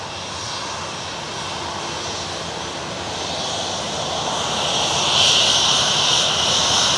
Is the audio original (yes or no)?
yes